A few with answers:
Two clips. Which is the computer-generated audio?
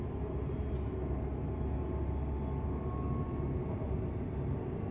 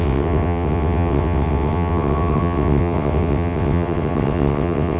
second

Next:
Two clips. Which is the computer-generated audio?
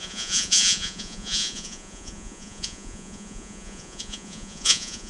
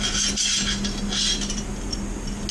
first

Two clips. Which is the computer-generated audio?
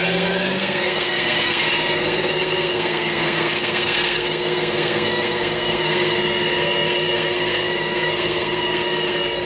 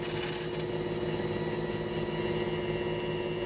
first